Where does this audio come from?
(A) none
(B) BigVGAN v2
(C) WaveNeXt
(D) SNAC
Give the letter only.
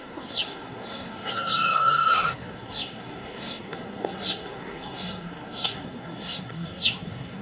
D